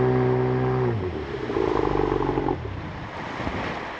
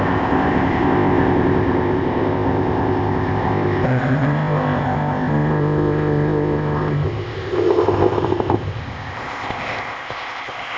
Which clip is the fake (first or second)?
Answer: second